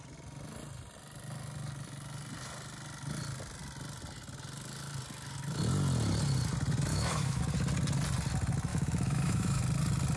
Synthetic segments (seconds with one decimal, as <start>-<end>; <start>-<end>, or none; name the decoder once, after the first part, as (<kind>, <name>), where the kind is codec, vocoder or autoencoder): 6.9-7.4 (autoencoder, DAC-VAE); 8.7-9.6